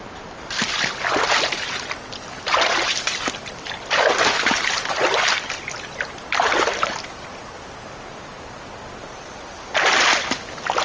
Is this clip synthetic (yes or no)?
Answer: no